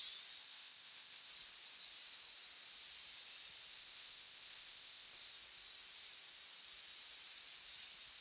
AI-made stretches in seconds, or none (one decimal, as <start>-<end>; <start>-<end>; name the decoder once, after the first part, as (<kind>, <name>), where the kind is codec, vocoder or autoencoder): 0.4-1.3 (codec, ZipCodec); 3.7-5.3